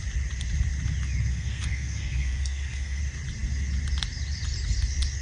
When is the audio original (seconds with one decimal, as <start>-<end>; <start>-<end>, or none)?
0.0-1.3; 3.0-5.2

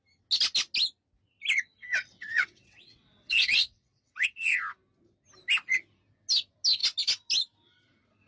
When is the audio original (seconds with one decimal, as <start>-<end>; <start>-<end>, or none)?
0.0-1.8; 4.6-8.3

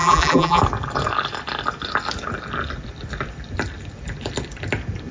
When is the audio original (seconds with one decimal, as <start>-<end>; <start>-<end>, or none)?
0.6-5.1

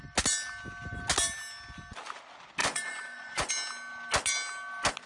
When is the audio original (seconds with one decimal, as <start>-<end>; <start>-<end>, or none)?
0.0-2.6; 3.5-5.1

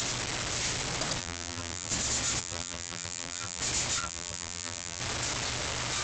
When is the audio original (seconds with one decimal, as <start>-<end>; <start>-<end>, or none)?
0.0-1.2; 1.9-2.4; 3.6-4.0; 5.0-6.0